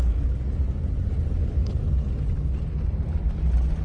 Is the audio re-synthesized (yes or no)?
no